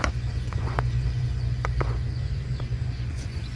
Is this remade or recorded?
remade